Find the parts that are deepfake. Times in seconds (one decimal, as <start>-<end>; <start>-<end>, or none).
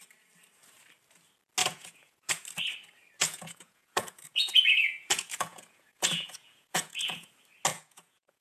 1.6-2.3; 3.2-7.3; 7.7-8.4